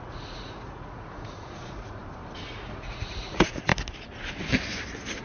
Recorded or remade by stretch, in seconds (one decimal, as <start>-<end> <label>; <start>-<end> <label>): 0.0-2.0 remade; 2.0-2.5 recorded; 2.5-3.7 remade; 3.7-5.2 recorded